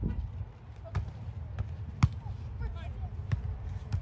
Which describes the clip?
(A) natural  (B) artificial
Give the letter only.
A